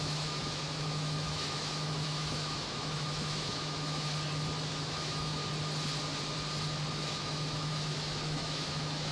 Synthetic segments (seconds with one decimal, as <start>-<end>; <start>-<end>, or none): 0.0-4.1; 4.7-5.4; 6.9-9.1